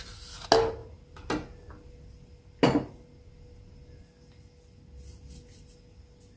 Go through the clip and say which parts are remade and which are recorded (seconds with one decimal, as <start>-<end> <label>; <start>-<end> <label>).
0.0-6.4 recorded